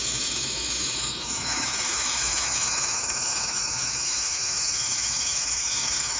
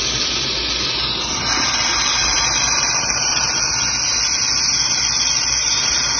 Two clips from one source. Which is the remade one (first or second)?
first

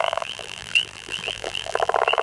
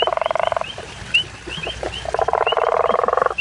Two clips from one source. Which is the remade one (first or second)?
first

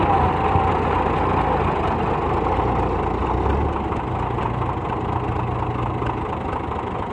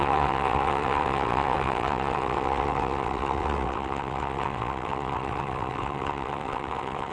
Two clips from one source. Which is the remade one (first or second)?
second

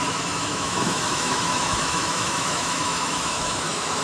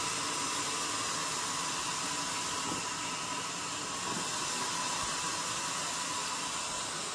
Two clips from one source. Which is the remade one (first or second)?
first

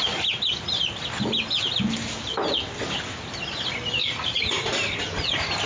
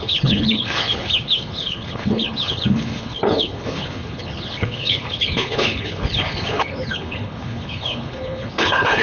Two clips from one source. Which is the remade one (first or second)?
second